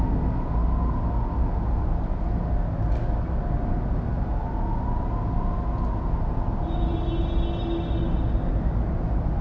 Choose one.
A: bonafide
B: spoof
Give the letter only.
A